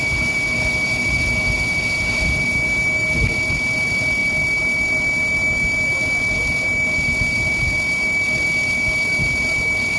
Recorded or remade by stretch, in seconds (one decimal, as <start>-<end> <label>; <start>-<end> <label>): 0.0-10.0 recorded